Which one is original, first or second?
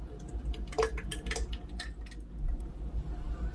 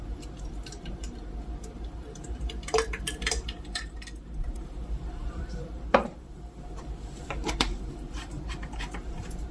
first